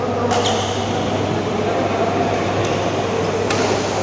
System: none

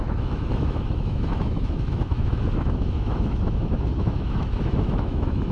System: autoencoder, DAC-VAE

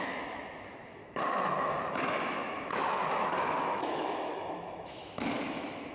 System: autoencoder, DAC-VAE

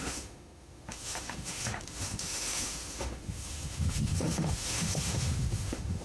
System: autoencoder, DAC-VAE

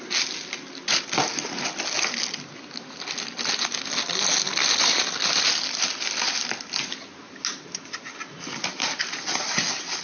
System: none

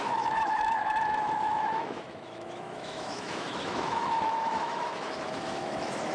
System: autoencoder, DAC-VAE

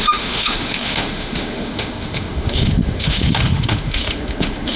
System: autoencoder, DAC-VAE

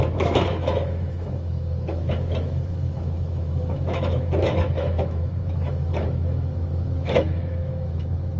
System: autoencoder, DAC-VAE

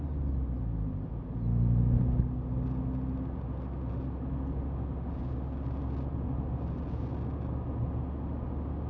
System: none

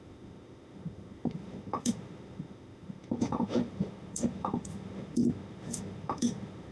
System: autoencoder, DAC-VAE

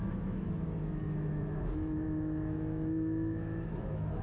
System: autoencoder, DAC-VAE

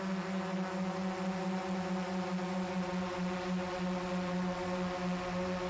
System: none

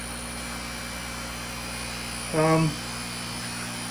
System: none